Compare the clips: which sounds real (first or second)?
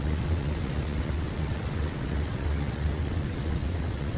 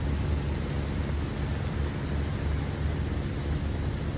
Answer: second